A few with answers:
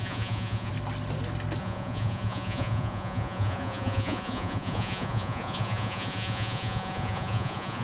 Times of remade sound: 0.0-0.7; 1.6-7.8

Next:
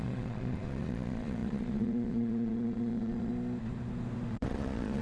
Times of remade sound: 0.0-3.3; 4.3-5.0